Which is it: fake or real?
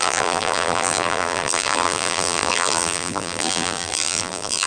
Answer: fake